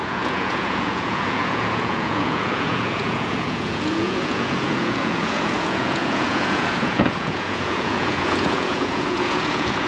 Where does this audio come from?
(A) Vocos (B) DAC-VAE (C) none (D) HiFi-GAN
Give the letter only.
A